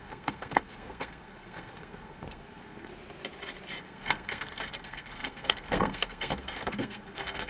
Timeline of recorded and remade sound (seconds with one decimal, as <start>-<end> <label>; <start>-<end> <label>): 0.0-2.9 remade; 2.9-3.8 recorded; 3.8-7.5 remade